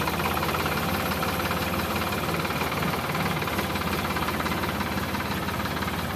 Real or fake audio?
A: fake